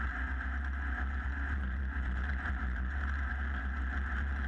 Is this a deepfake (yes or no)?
no